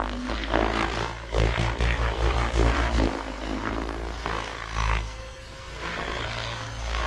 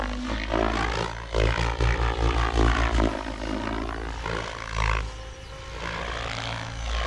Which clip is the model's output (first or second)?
first